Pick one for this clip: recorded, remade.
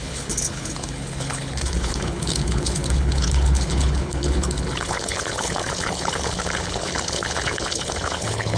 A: remade